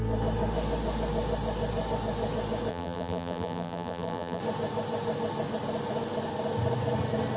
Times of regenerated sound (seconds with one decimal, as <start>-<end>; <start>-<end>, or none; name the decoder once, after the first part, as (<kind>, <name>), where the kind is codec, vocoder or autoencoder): 2.7-4.4 (vocoder, BigVGAN v2)

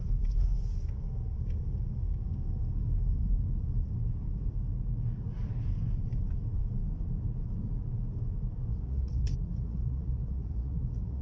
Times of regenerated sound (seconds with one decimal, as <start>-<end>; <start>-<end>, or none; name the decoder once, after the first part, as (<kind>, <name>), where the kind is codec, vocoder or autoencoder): 8.7-11.2 (vocoder, Vocos)

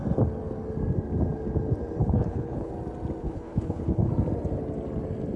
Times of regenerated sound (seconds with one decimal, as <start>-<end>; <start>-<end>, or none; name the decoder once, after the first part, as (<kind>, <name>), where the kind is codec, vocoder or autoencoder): 2.0-2.7 (codec, HILCodec); 3.2-4.1

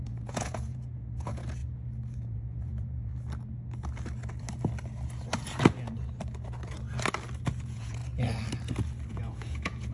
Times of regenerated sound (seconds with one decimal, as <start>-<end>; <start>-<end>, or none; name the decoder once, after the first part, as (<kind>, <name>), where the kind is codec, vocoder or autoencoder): 0.0-1.6 (vocoder, Vocos); 2.2-3.1; 7.6-8.0; 9.1-9.9

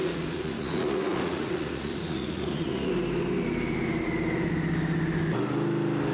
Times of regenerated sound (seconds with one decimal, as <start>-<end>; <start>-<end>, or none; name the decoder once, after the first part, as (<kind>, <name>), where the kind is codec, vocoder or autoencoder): 0.0-2.9 (vocoder, Vocos)